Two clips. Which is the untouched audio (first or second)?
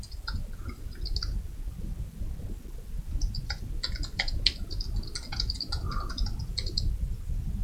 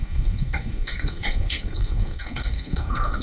first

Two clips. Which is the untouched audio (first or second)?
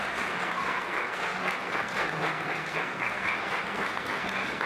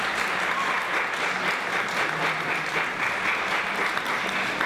second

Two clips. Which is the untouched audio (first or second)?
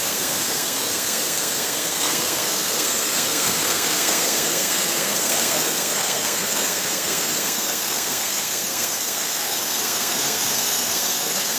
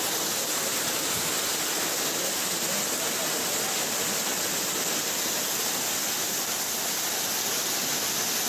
second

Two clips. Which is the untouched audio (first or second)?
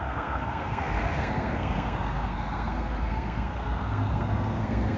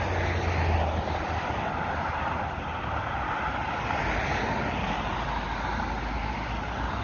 second